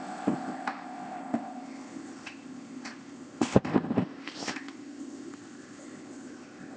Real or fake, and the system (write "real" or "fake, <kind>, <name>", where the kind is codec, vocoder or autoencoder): fake, codec, ZipCodec